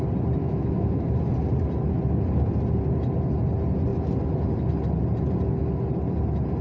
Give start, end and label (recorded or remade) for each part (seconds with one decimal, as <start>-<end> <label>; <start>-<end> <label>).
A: 0.0-0.4 recorded; 0.4-1.2 remade; 1.2-6.6 recorded